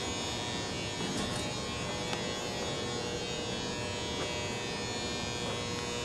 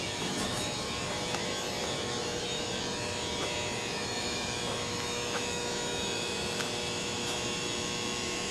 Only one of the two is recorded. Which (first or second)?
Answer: first